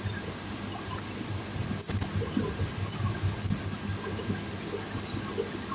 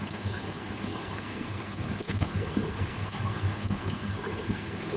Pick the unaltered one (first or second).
first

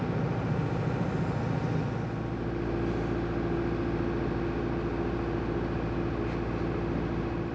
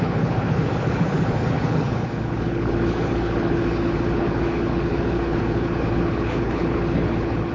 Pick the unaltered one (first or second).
first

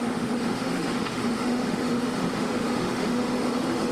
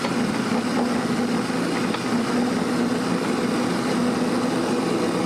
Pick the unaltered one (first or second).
second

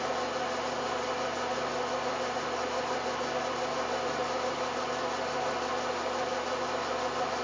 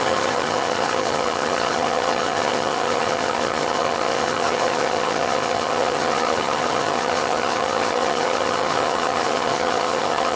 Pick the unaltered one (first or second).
first